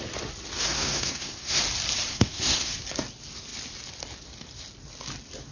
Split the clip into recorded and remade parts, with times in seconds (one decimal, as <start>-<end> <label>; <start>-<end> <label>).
0.0-0.6 recorded; 0.6-1.6 remade; 1.6-2.1 recorded; 2.1-2.7 remade; 2.7-5.5 recorded

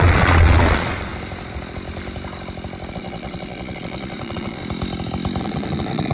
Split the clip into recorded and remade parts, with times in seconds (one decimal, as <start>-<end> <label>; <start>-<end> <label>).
0.0-1.1 remade; 1.1-2.9 recorded; 2.9-4.6 remade; 4.6-5.4 recorded; 5.4-6.1 remade

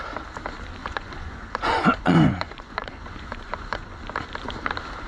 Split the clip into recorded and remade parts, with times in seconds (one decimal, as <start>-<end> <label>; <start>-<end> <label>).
0.0-0.8 recorded; 0.8-3.9 remade; 3.9-5.1 recorded